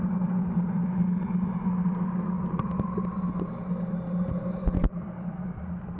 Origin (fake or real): real